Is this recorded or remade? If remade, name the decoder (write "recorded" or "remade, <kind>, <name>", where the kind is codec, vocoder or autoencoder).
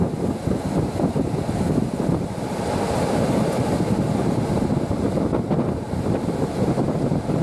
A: recorded